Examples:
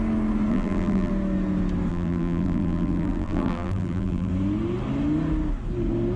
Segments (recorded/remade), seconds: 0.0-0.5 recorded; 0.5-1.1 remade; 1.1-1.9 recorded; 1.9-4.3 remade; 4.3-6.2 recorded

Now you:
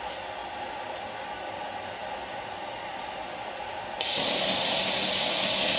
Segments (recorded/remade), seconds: 0.0-5.8 recorded

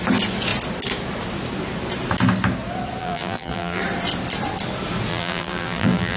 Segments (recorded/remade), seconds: 0.0-3.0 recorded; 3.0-3.8 remade; 3.8-5.1 recorded; 5.1-6.2 remade

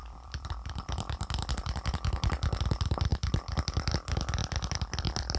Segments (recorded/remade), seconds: 0.0-1.5 remade; 1.5-4.4 recorded; 4.4-5.4 remade

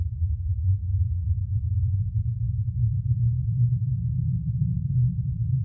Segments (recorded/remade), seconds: 0.0-0.8 remade; 0.8-2.8 recorded; 2.8-3.9 remade; 3.9-4.5 recorded; 4.5-5.6 remade